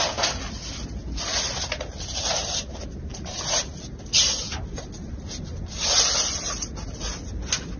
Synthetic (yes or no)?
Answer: no